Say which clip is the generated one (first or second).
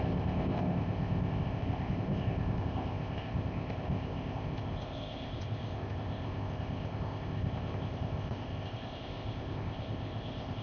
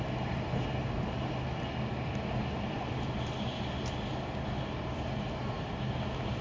first